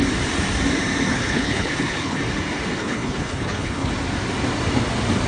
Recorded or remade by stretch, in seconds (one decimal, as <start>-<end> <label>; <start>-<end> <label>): 0.0-1.1 recorded; 1.1-2.2 remade; 2.2-2.8 recorded; 2.8-3.9 remade; 3.9-5.3 recorded